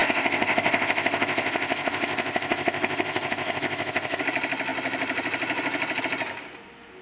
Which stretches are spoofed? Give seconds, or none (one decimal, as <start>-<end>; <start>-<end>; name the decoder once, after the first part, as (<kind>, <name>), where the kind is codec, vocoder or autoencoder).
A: 0.0-4.2 (codec, ZipCodec)